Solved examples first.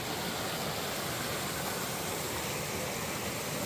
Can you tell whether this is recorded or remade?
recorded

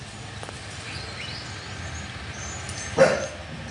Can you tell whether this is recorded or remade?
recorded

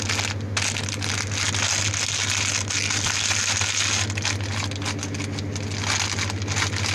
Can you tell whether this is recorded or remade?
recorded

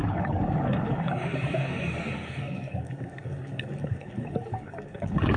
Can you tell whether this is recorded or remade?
remade